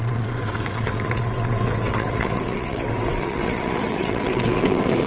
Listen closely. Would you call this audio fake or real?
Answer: fake